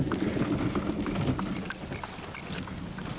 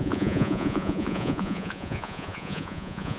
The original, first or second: first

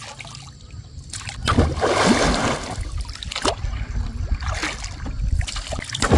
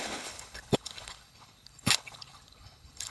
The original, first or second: first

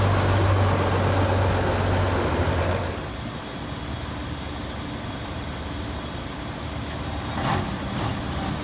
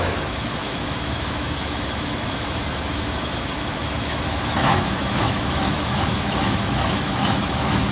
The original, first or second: first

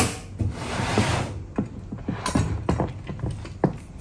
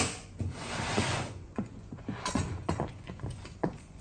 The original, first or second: first